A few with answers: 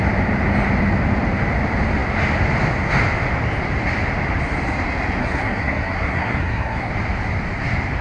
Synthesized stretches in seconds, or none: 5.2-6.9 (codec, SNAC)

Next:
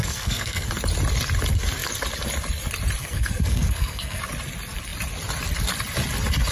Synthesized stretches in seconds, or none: 0.0-0.7 (codec, SNAC); 3.0-4.2

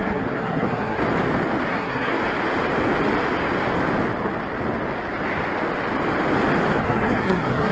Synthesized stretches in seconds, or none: 0.0-1.0 (codec, SNAC); 1.7-2.2; 6.8-7.7